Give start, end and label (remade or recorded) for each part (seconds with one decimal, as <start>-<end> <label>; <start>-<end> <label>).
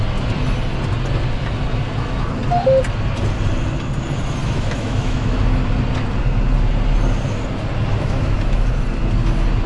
0.0-4.4 recorded; 4.4-5.4 remade; 5.4-7.9 recorded; 7.9-8.7 remade; 8.7-9.7 recorded